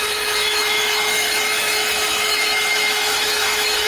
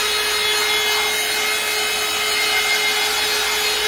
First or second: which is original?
second